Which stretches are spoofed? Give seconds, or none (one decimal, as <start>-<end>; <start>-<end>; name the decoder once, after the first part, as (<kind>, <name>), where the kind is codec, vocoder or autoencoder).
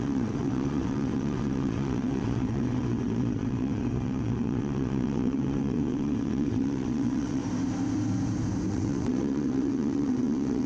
0.0-7.4 (vocoder, WaveNeXt); 8.7-10.7